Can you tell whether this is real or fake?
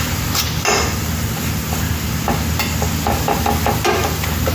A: real